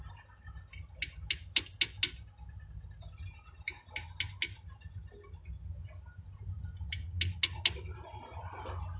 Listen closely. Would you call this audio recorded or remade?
recorded